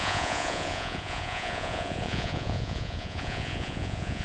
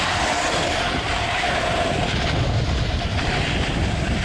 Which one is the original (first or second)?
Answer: second